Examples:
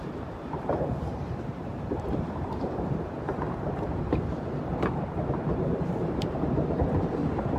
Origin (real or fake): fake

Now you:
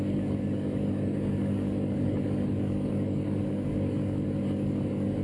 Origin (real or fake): fake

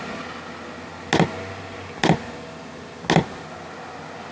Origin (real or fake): real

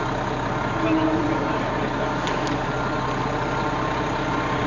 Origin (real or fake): real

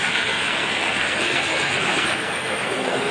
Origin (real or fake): fake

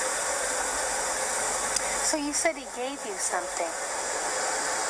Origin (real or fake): real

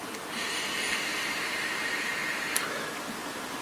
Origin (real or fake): real